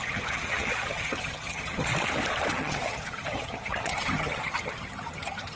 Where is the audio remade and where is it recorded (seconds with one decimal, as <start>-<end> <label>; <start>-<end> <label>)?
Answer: 0.0-1.9 remade; 1.9-2.5 recorded; 2.5-5.6 remade